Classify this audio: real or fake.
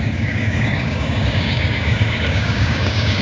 fake